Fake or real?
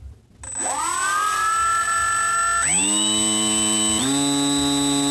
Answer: real